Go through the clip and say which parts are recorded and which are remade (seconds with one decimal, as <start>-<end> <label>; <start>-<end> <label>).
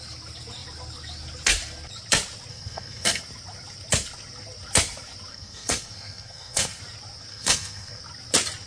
0.0-2.5 recorded; 2.5-3.2 remade; 3.2-5.3 recorded; 5.3-6.8 remade; 6.8-7.3 recorded; 7.3-8.0 remade; 8.0-8.7 recorded